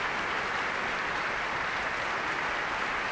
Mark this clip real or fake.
real